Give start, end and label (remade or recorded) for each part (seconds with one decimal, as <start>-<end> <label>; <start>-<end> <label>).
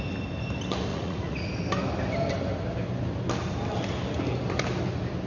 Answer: 0.0-0.9 recorded; 0.9-1.5 remade; 1.5-5.3 recorded